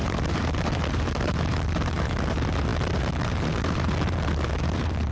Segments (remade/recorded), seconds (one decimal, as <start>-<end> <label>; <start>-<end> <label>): 0.0-5.1 remade

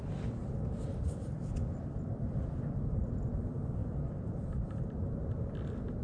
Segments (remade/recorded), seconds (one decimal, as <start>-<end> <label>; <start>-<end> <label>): 0.0-6.0 remade

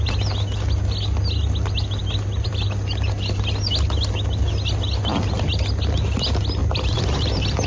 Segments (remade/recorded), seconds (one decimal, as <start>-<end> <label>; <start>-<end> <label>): 0.0-2.0 recorded; 2.0-2.7 remade; 2.7-6.6 recorded; 6.6-7.2 remade; 7.2-7.7 recorded

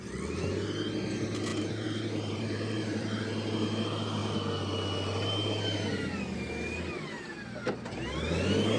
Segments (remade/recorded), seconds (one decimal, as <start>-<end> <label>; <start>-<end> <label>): 0.0-1.5 recorded; 1.5-3.2 remade; 3.2-8.8 recorded